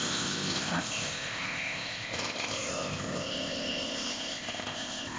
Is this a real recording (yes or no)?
no